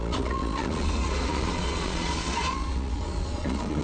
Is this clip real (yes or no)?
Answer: no